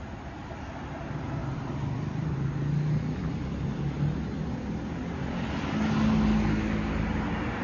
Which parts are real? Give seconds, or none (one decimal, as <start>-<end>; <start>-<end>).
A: 0.0-7.6